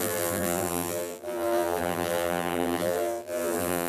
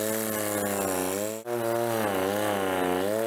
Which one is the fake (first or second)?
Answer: first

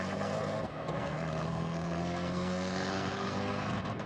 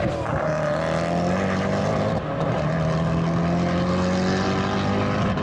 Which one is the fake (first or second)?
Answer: first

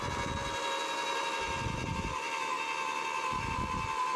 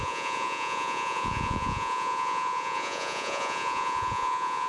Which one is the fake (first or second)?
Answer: second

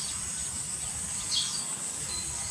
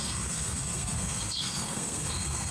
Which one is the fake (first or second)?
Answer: second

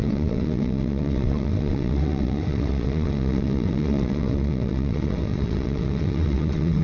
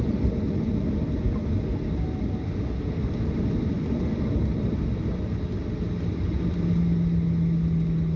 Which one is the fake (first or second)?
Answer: first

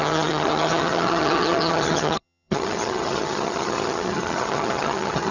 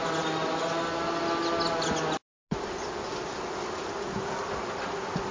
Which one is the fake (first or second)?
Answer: first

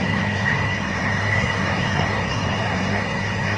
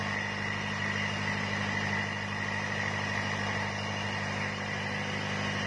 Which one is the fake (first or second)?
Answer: first